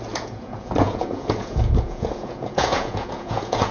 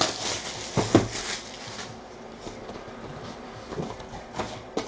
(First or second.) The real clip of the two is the second